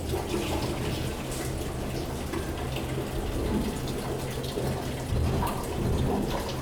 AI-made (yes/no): no